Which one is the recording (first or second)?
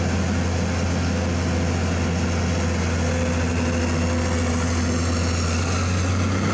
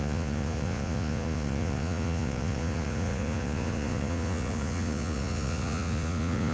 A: first